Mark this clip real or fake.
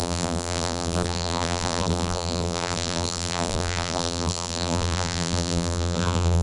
fake